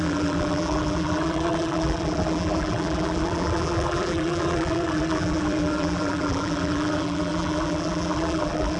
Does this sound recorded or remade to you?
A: remade